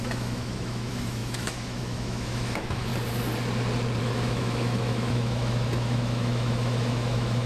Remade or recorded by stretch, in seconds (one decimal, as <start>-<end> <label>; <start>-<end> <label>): 0.0-2.9 remade; 2.9-4.0 recorded; 4.0-7.5 remade